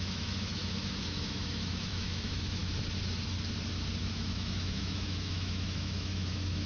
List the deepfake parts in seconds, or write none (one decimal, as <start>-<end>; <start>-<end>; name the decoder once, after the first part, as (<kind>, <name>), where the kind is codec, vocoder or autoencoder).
0.0-2.6 (autoencoder, DAC-VAE); 4.0-6.7

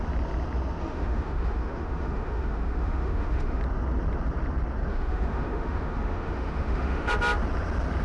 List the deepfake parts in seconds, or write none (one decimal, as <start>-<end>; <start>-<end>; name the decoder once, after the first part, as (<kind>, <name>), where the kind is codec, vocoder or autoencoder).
0.8-3.6 (autoencoder, DAC-VAE); 4.9-7.1

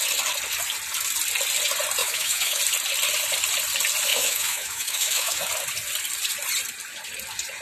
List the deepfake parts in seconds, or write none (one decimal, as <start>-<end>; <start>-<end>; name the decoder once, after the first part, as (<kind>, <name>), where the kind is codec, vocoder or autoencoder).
2.0-2.6 (autoencoder, DAC-VAE); 4.1-5.5

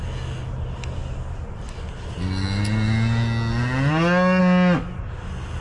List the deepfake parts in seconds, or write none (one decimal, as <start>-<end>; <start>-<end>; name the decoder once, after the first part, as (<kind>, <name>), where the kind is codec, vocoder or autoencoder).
none